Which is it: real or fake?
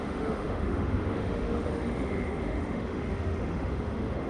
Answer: fake